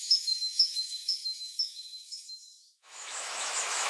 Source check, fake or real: fake